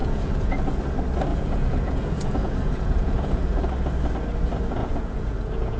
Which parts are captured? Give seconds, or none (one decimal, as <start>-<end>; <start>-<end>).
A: 0.8-1.3; 3.6-4.8

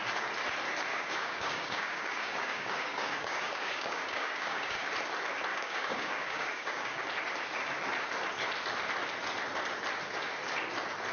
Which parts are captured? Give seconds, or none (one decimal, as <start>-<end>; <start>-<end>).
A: 0.0-0.9; 4.9-5.5; 7.0-11.1

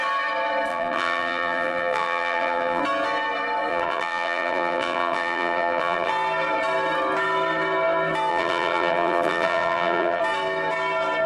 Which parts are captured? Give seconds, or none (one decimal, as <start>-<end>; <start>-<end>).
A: 0.0-0.7; 2.8-3.7; 6.1-8.3; 10.2-11.3

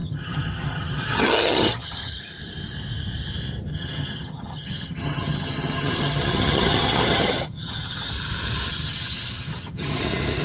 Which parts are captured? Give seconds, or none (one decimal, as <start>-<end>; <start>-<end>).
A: 2.2-3.7; 8.1-8.7; 10.0-10.4

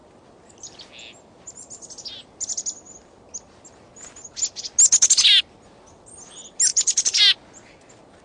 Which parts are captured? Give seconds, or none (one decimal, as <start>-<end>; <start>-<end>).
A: 0.0-6.7; 7.2-8.2

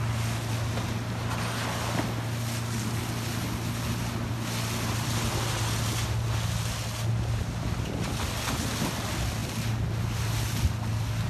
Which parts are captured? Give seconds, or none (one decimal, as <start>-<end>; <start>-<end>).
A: 0.0-11.3